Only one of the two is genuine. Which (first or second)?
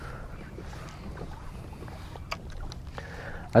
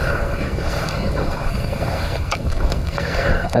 first